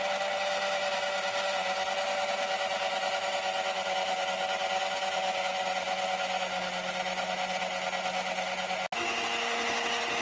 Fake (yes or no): no